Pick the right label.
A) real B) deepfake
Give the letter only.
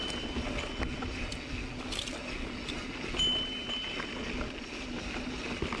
A